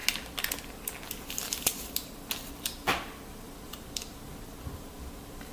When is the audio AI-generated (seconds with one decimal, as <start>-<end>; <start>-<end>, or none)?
none